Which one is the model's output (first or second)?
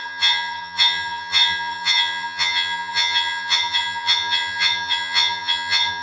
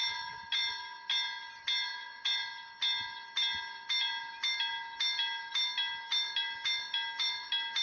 first